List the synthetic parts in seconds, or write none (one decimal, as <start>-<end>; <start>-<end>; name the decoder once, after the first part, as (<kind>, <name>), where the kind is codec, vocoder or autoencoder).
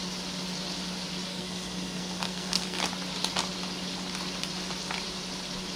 1.3-2.8 (codec, SNAC)